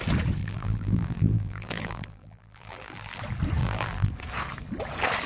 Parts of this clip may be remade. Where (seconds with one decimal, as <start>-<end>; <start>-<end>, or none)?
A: 0.4-3.2; 3.6-4.1